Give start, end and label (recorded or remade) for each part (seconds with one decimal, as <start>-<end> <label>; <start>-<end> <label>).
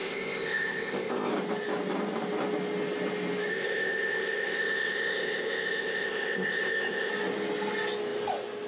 0.0-1.3 remade; 1.3-3.5 recorded; 3.5-7.1 remade; 7.1-8.7 recorded